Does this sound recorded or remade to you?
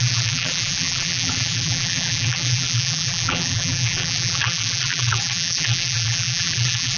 remade